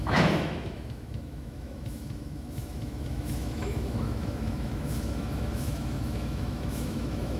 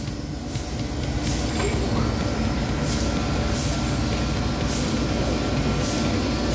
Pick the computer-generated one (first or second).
first